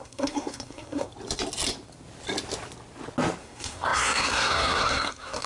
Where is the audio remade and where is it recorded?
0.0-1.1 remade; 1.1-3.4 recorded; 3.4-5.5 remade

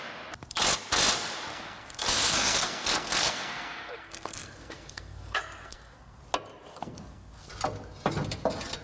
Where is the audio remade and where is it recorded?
0.0-1.5 recorded; 1.5-6.2 remade; 6.2-6.7 recorded; 6.7-7.5 remade; 7.5-8.8 recorded

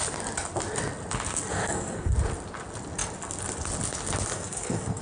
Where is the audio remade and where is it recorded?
0.0-1.5 recorded; 1.5-2.1 remade; 2.1-4.3 recorded; 4.3-5.0 remade